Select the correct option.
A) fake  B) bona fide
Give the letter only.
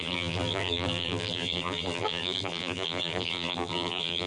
A